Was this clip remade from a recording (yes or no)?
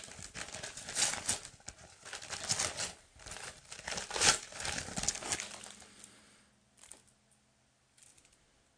no